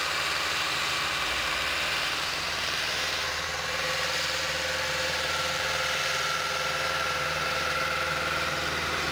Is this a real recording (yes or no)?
no